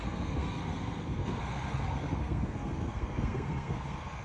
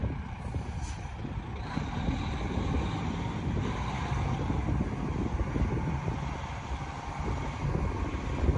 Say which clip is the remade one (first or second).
first